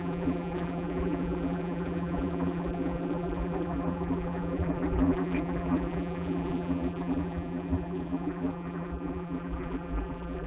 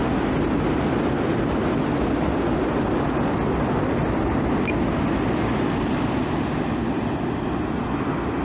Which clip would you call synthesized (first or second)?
first